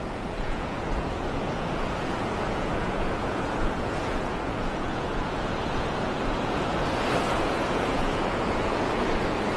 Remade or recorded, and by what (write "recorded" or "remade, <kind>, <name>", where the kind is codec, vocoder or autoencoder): remade, vocoder, Vocos